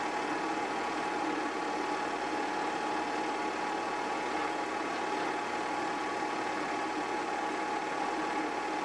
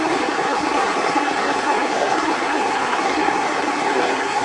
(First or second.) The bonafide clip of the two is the first